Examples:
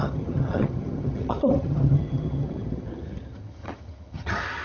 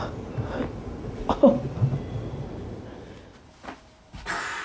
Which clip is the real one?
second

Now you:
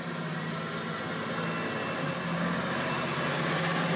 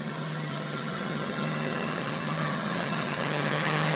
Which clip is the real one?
first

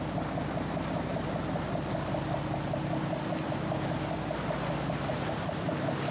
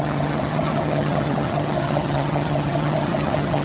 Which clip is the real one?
first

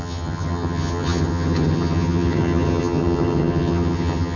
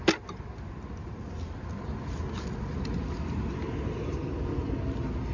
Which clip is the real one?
second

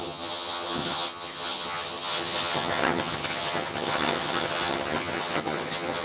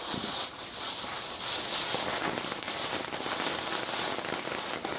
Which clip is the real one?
second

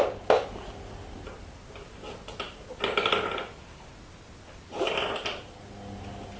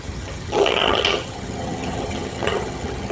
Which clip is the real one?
first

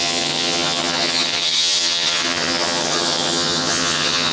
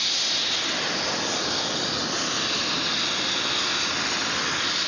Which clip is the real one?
second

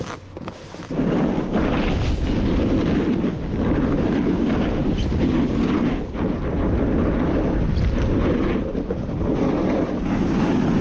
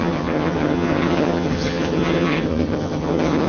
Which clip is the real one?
first